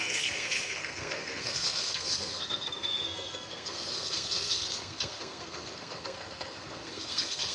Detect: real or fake fake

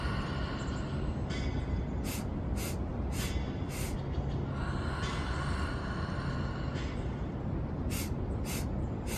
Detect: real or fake real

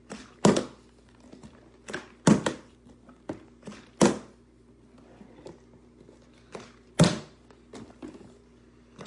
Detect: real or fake real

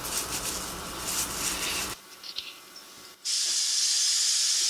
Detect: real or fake real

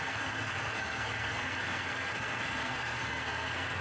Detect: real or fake fake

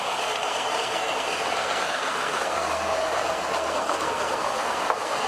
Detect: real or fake fake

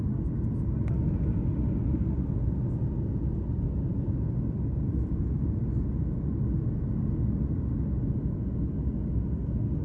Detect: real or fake real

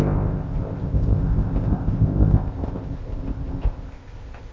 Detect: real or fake fake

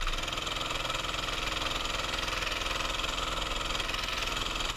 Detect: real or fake real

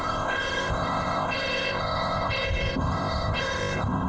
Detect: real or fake fake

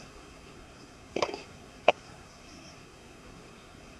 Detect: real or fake fake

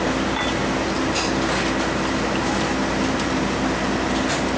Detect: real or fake real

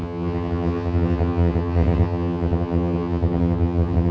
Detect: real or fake fake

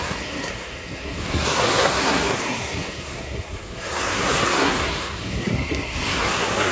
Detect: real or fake fake